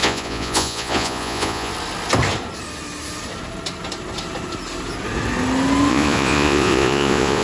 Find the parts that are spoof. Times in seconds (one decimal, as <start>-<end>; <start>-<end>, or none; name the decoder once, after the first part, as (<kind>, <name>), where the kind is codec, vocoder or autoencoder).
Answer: 0.0-1.7 (vocoder, Vocos); 5.9-7.4